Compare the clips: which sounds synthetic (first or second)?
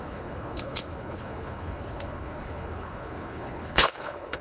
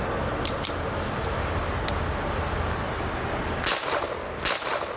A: first